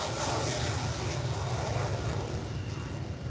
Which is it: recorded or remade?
recorded